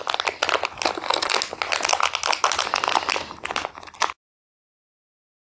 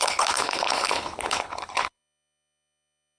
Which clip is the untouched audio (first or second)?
first